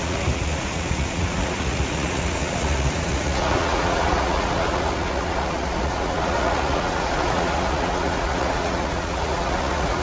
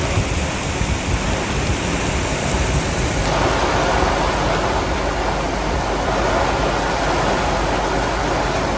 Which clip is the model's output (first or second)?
first